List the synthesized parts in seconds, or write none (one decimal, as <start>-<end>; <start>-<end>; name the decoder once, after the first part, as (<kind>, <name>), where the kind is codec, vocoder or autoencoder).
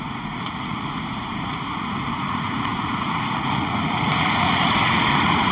0.0-5.5 (vocoder, Vocos)